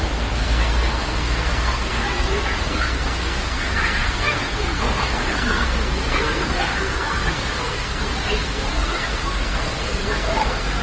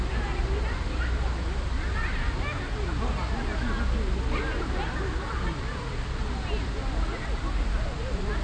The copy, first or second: first